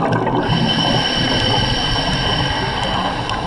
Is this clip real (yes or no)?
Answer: yes